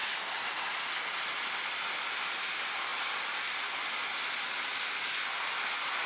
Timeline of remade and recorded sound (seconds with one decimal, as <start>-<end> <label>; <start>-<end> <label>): 0.0-6.1 recorded